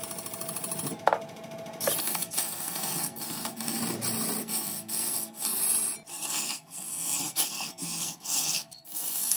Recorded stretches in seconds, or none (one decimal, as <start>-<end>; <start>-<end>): 0.0-2.0; 3.8-4.4; 5.6-6.1